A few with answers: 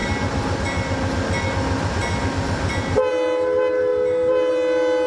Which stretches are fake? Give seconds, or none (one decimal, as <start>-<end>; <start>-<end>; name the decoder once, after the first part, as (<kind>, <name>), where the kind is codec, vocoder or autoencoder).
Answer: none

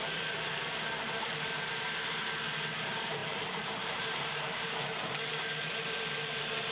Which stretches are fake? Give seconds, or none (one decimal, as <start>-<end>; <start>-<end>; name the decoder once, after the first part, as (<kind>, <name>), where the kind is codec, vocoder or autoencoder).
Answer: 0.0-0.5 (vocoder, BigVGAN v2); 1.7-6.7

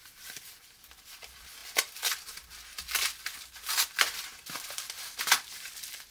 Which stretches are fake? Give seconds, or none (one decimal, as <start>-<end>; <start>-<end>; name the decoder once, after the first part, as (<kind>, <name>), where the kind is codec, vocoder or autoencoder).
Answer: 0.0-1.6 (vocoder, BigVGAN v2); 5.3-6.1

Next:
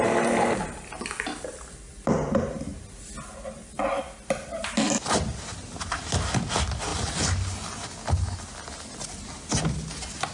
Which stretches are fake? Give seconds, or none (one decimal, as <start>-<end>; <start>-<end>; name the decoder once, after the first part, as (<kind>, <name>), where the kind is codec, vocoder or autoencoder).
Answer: none

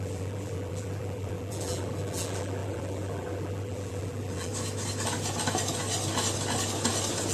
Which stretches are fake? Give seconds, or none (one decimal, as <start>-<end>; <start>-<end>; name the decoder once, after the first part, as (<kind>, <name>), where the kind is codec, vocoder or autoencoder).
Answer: 0.0-4.5 (vocoder, BigVGAN v2)

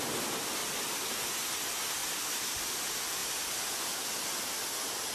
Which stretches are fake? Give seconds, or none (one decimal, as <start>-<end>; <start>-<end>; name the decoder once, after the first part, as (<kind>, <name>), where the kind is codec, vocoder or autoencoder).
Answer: none

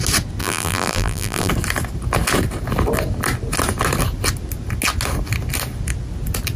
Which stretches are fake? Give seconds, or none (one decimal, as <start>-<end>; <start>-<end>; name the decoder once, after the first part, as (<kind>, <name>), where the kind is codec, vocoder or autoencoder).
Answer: 0.4-1.5 (vocoder, BigVGAN v2)

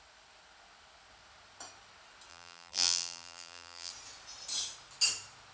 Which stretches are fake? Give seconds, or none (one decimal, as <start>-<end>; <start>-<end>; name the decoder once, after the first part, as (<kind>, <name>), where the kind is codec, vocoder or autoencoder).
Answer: 2.3-3.9 (vocoder, BigVGAN v2)